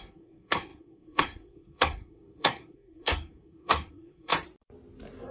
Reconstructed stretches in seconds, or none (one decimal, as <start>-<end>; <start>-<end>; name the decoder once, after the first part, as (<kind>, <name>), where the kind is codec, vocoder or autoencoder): 0.0-4.3 (codec, SNAC)